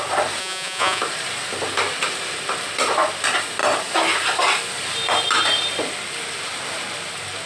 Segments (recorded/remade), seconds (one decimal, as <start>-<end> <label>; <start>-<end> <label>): 0.0-0.4 recorded; 0.4-1.0 remade; 1.0-7.5 recorded